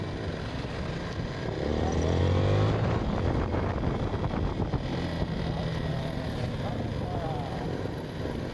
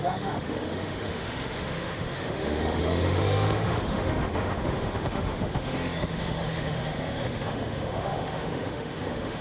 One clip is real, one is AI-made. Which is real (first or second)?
first